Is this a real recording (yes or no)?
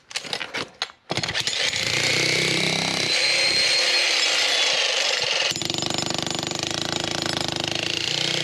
yes